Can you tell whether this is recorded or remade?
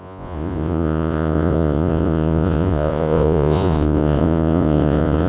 remade